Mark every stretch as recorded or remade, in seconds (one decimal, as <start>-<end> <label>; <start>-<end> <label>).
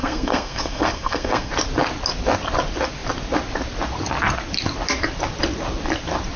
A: 0.0-1.5 remade; 1.5-6.4 recorded